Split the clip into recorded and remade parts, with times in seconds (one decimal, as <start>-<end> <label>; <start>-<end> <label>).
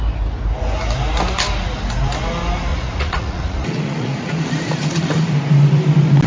0.0-2.7 recorded; 2.7-5.3 remade; 5.3-6.3 recorded